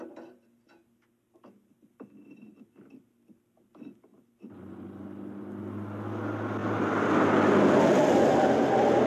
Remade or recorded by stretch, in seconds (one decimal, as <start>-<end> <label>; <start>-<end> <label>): 0.0-9.1 recorded